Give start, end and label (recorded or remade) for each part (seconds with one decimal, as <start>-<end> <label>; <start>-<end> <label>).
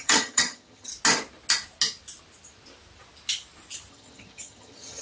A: 0.0-0.9 remade; 0.9-3.9 recorded; 3.9-5.0 remade